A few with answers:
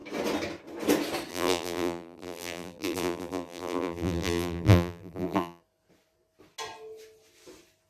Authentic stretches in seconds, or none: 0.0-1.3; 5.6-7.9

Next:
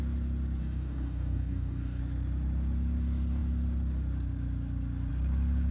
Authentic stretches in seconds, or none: 0.0-0.6; 2.0-5.7

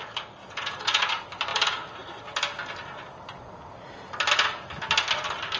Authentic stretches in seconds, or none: 0.0-0.4; 1.1-5.6

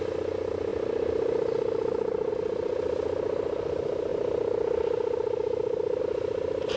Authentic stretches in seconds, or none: 0.0-6.8

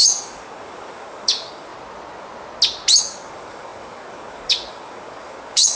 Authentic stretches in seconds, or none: 1.7-3.0